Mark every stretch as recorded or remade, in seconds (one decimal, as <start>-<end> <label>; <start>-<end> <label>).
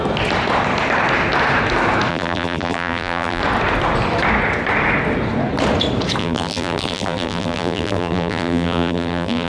0.0-2.1 recorded; 2.1-3.4 remade; 3.4-6.2 recorded; 6.2-9.5 remade